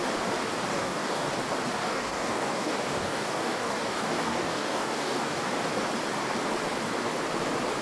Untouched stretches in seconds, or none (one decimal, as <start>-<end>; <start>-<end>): 0.0-0.7; 1.3-1.8; 5.5-7.8